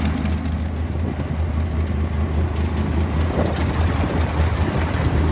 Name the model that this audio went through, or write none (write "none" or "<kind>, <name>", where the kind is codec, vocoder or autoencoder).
none